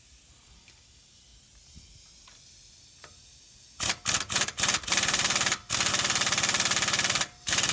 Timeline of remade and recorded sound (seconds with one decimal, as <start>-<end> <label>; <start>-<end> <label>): 0.0-7.7 recorded